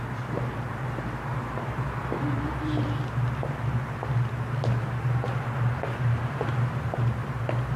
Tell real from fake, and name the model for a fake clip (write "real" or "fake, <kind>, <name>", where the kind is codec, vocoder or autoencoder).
real